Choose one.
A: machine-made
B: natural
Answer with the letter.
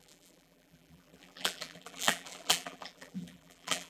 A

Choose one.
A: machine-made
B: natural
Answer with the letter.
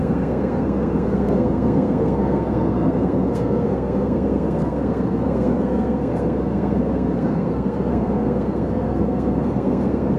A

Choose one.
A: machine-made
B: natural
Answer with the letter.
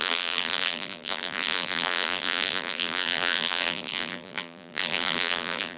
A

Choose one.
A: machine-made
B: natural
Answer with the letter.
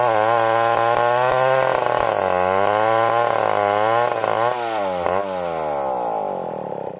B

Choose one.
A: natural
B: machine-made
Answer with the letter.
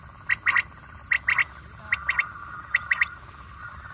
A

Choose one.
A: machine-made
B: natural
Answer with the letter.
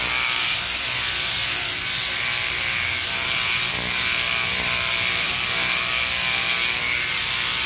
B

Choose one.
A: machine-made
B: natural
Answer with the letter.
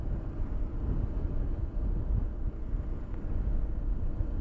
B